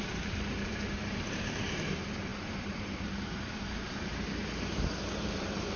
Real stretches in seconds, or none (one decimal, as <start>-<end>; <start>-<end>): none